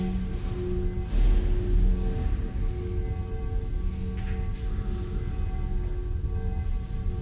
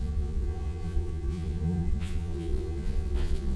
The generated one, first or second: second